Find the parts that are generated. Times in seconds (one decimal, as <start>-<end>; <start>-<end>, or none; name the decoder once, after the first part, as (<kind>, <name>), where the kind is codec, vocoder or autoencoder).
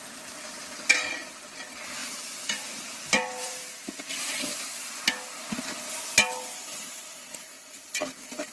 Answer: 2.0-3.9 (vocoder, BigVGAN v2)